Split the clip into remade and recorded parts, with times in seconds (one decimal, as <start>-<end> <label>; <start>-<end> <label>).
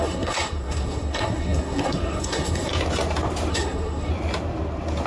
0.0-2.7 remade; 2.7-3.5 recorded; 3.5-4.1 remade; 4.1-5.1 recorded